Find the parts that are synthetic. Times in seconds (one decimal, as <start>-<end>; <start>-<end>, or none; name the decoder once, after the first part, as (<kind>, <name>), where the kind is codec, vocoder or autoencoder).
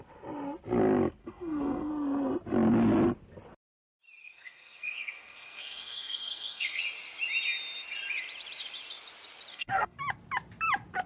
1.2-1.9 (codec, SNAC); 4.2-6.8; 9.5-10.0